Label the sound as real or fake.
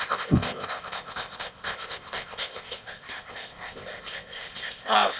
fake